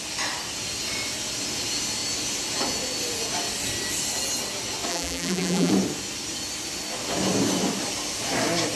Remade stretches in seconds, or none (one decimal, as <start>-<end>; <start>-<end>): 4.9-5.7

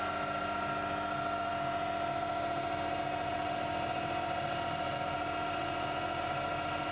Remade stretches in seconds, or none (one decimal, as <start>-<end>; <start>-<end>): none

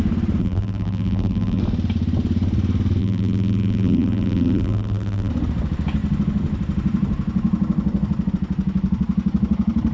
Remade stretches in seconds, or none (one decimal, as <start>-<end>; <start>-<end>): 0.4-1.6; 3.0-5.3

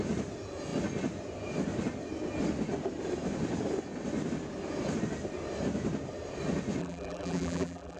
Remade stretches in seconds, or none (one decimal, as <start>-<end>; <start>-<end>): 6.8-8.0

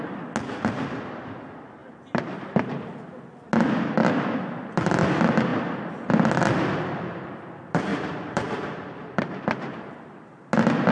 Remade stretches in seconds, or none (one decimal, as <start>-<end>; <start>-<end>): 1.8-2.5; 7.9-9.4

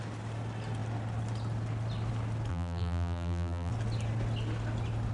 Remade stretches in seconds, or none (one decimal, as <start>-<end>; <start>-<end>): 2.5-3.7

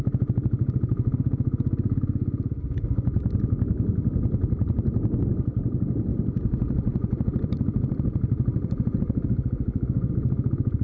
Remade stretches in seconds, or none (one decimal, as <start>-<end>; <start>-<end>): 6.1-10.1

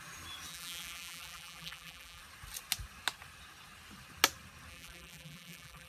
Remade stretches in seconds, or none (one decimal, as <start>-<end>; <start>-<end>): 0.5-2.2; 4.7-5.9